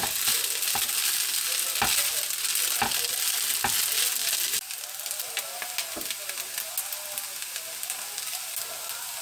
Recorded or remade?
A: recorded